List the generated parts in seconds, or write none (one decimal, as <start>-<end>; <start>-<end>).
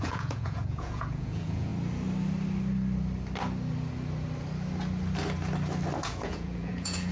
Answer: 0.0-1.7; 6.0-7.1